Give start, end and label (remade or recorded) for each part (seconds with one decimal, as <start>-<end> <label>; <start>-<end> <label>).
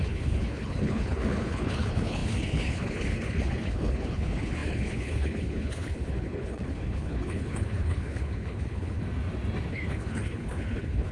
0.0-9.0 remade; 9.0-9.7 recorded; 9.7-11.1 remade